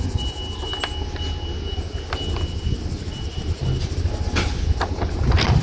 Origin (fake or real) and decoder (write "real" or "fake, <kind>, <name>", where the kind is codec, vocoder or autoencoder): real